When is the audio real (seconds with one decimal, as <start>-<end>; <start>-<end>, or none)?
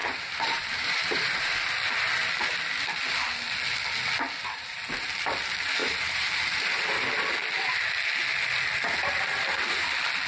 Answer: 1.7-5.8; 6.4-10.3